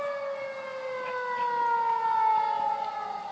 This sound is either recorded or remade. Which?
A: recorded